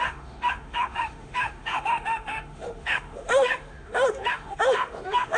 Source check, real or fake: fake